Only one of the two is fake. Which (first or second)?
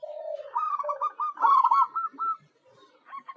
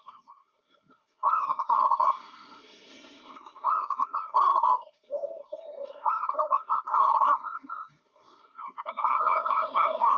second